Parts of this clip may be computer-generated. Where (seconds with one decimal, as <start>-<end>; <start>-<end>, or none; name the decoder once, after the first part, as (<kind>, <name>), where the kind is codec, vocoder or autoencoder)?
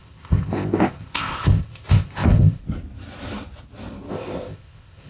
0.0-2.6 (codec, ZipCodec); 4.1-5.1